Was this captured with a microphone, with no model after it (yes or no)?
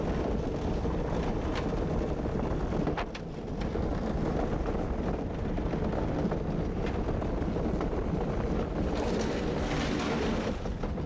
yes